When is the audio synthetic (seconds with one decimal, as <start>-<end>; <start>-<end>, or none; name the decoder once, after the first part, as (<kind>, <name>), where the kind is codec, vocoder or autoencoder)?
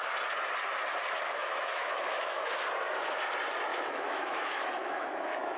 1.4-2.5 (autoencoder, DAC-VAE); 3.7-5.6